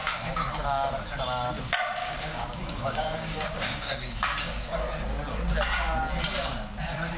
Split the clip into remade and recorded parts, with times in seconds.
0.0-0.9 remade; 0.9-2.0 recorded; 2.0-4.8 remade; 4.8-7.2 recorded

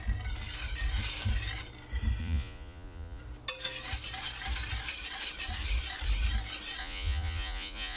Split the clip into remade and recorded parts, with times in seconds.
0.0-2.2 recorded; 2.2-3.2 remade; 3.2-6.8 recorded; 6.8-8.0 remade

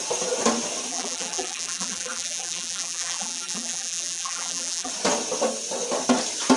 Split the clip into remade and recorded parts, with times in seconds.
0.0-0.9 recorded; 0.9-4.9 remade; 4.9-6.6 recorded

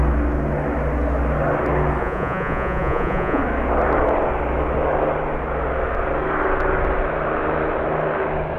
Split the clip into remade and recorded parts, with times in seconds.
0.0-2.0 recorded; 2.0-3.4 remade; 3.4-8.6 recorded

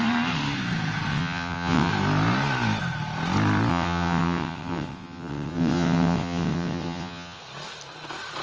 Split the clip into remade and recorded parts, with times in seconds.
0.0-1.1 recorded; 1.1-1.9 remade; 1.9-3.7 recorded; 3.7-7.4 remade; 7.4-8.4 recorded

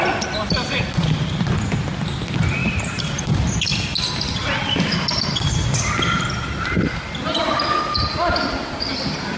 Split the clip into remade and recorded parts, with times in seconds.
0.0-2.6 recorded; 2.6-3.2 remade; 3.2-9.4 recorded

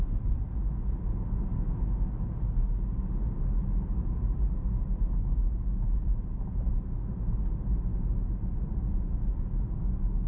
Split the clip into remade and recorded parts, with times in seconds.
0.0-7.9 recorded; 7.9-8.5 remade; 8.5-10.3 recorded

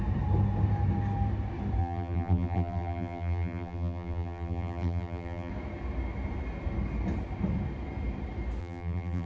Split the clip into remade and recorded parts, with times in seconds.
0.0-1.8 recorded; 1.8-5.5 remade; 5.5-8.6 recorded; 8.6-9.3 remade